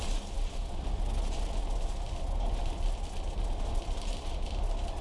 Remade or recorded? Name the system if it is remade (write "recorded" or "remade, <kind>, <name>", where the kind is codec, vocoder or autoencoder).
recorded